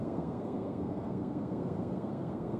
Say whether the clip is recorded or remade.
remade